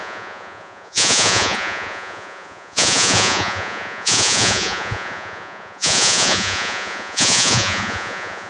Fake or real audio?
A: fake